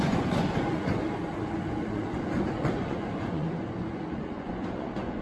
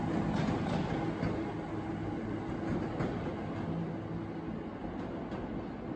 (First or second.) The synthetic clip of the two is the first